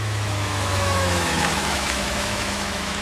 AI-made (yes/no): yes